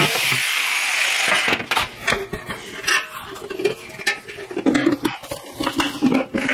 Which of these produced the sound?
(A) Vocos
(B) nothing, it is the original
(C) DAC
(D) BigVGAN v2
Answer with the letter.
B